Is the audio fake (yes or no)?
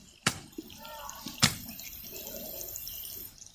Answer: yes